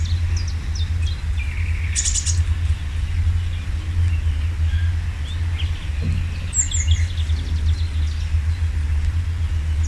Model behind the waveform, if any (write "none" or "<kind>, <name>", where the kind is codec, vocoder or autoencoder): none